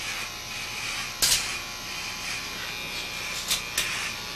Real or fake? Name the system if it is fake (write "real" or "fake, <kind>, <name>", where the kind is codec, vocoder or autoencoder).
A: real